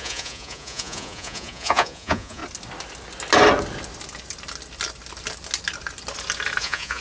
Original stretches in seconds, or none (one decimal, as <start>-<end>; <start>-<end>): 2.4-6.6